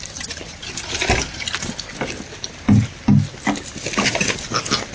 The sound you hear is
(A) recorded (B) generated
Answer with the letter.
A